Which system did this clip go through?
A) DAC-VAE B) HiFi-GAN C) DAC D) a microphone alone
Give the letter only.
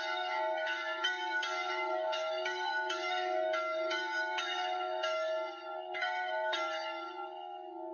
C